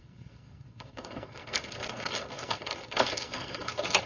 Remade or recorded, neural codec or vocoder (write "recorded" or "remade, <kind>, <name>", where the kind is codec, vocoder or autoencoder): remade, codec, SNAC